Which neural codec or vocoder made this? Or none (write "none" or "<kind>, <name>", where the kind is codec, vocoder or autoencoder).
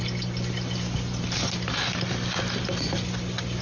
none